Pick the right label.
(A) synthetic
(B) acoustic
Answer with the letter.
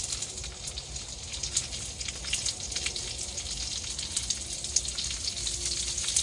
B